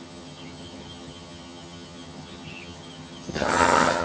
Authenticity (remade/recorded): remade